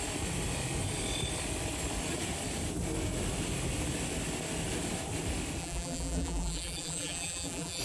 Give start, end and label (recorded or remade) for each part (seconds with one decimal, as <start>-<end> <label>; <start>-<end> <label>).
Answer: 0.0-5.6 recorded; 5.6-7.8 remade